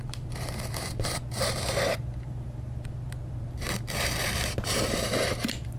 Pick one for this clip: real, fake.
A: fake